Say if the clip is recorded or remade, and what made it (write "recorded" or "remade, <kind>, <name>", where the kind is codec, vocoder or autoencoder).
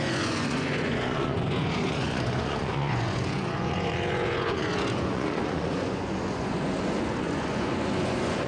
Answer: remade, vocoder, Vocos